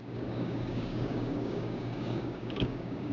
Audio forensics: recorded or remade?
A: remade